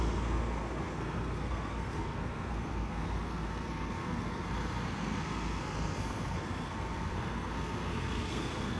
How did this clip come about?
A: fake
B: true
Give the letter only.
A